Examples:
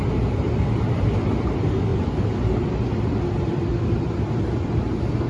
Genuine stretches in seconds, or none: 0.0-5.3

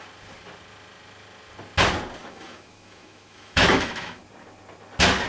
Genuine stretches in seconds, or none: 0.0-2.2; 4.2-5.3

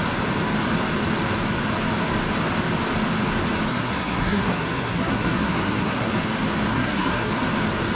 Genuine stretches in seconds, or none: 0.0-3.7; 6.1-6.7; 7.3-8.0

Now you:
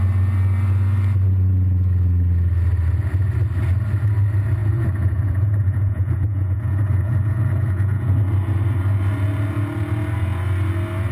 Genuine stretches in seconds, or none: 0.0-4.6; 8.2-11.1

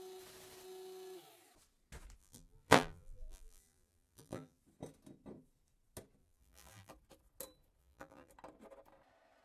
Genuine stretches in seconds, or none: 0.0-2.2; 4.6-6.2; 6.9-7.8; 8.3-9.4

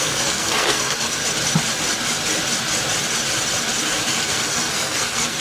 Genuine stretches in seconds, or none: 1.2-3.8